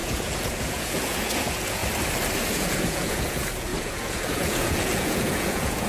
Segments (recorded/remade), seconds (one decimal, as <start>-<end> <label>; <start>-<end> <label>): 0.0-1.8 remade; 1.8-2.5 recorded; 2.5-5.9 remade